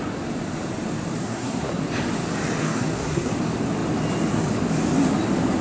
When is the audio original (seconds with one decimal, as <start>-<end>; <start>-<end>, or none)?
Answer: 0.0-1.2; 1.8-2.6; 3.3-5.6